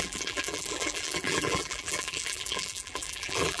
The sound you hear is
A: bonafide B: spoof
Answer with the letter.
B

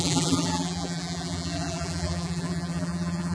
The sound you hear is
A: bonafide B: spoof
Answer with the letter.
B